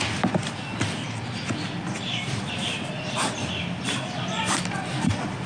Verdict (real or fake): real